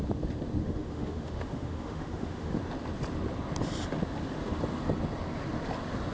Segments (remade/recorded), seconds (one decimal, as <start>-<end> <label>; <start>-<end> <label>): 0.0-0.6 recorded; 0.6-2.6 remade; 2.6-6.1 recorded